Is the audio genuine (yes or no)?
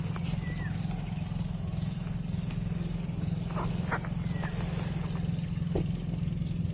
yes